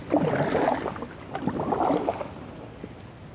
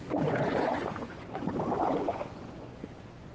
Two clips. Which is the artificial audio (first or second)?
second